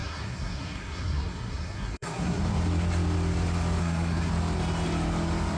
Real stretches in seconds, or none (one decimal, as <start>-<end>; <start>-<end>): 2.4-3.8; 4.3-5.6